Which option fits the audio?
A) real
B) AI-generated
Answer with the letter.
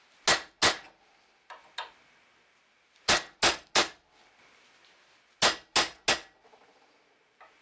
A